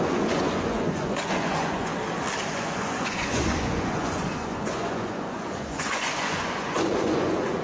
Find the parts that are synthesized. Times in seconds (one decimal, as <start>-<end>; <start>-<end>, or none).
0.0-1.9; 2.5-7.6